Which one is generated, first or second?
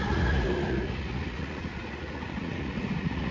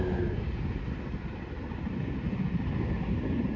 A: first